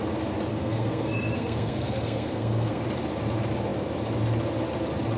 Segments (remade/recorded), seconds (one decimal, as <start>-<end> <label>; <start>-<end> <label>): 0.0-0.5 recorded; 0.5-2.8 remade; 2.8-5.2 recorded